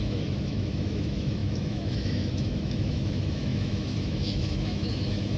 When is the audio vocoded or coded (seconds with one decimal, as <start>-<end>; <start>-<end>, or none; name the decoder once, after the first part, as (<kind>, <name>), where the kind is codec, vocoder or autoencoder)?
0.0-5.4 (autoencoder, DAC-VAE)